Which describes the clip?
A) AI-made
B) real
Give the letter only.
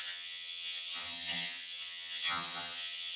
A